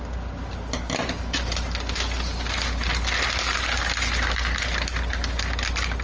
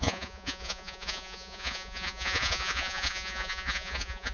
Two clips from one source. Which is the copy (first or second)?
second